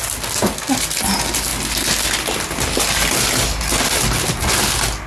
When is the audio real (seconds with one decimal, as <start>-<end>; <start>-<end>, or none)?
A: 0.0-5.1